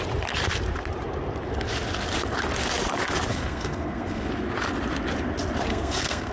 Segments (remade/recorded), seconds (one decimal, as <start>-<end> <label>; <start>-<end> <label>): 0.0-3.3 recorded; 3.3-4.3 remade; 4.3-5.7 recorded; 5.7-6.3 remade